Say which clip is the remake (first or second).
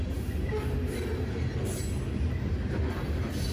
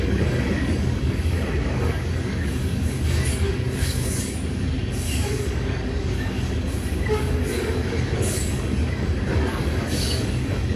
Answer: second